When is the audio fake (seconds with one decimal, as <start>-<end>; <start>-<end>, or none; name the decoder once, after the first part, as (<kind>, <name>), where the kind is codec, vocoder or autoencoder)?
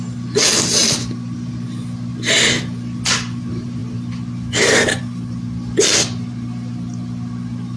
none